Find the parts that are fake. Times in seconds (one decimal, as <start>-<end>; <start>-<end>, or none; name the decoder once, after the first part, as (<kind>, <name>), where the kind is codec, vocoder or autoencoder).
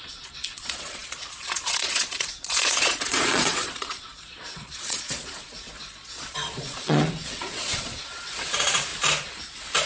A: 0.0-8.9 (vocoder, Vocos)